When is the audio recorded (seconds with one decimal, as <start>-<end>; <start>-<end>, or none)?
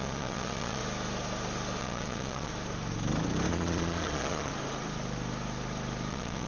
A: 0.8-1.8; 2.5-3.5; 4.5-6.1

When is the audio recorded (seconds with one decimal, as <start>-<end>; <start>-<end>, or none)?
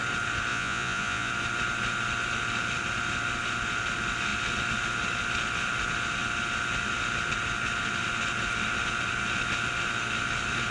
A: 0.0-0.5; 1.3-10.7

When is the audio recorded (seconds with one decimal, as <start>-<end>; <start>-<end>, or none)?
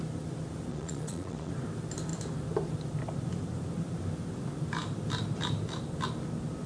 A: 0.0-0.7; 1.5-6.7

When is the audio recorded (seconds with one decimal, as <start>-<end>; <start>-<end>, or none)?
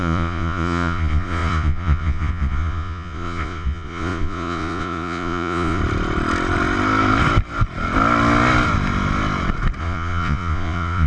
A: 5.8-9.8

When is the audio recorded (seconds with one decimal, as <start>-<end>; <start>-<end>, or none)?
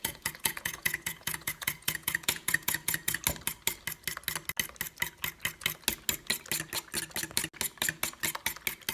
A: 3.2-8.9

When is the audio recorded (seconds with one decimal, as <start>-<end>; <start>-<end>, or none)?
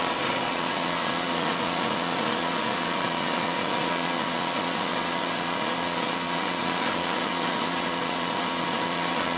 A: none